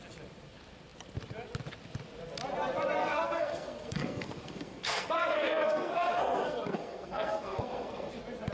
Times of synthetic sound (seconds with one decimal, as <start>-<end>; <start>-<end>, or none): 3.0-8.1